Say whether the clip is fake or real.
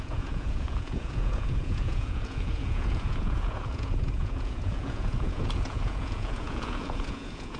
fake